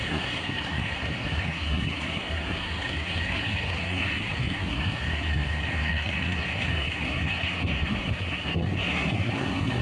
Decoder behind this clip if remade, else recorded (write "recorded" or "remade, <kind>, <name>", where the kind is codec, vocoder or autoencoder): remade, codec, SNAC